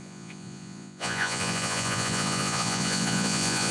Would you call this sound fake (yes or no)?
yes